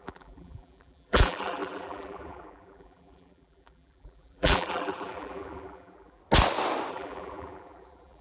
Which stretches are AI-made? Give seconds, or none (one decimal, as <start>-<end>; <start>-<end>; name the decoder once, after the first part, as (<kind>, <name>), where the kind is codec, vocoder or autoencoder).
0.0-6.2 (vocoder, BigVGAN v2); 6.9-8.2